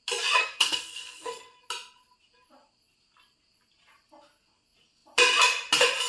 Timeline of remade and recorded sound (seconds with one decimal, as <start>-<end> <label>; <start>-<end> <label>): 0.0-0.4 recorded; 0.4-1.6 remade; 1.6-6.1 recorded